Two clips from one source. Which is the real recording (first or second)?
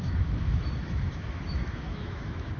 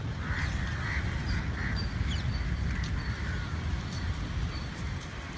second